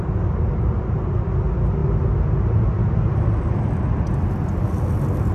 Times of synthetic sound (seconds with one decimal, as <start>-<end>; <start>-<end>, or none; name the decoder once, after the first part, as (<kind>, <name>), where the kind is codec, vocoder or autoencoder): none

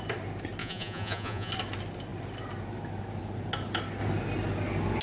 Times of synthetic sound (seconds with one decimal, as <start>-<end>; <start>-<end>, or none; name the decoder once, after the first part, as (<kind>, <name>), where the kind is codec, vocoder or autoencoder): 0.6-1.5 (vocoder, Vocos)

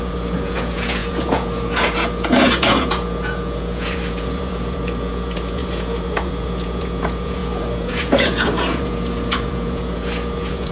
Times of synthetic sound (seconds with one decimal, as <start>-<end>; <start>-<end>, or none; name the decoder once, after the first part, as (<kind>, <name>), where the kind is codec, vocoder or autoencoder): 0.0-10.7 (vocoder, Vocos)

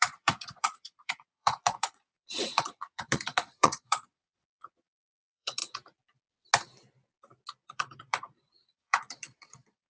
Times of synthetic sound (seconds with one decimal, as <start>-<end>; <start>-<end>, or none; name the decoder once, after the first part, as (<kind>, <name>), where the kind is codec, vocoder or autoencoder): 0.0-5.6 (vocoder, Vocos); 7.6-9.9

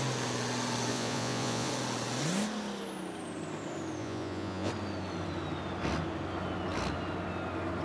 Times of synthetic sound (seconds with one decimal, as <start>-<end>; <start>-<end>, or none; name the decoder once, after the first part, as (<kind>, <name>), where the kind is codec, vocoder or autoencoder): 0.9-1.7 (vocoder, Vocos); 4.0-4.7

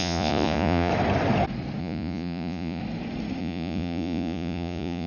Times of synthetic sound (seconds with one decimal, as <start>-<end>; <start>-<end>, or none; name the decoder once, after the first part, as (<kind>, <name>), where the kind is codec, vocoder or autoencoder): 0.0-0.9 (vocoder, Vocos); 1.8-2.8; 3.4-5.1

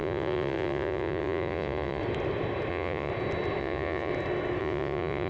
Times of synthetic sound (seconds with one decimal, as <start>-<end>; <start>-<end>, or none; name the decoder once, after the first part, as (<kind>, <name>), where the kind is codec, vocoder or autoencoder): 0.0-2.0 (vocoder, Vocos); 2.7-3.1; 3.6-4.1; 4.6-5.3

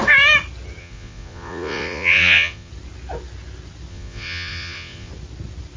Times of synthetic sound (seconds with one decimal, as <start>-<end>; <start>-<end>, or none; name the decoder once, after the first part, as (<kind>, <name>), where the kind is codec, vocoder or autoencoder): 0.8-2.7 (vocoder, Vocos); 3.9-5.1